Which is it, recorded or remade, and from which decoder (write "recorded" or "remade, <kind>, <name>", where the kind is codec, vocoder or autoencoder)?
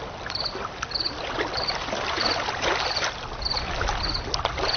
recorded